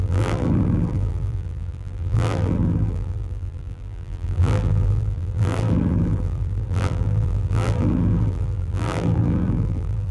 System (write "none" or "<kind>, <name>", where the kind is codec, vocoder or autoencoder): vocoder, BigVGAN v2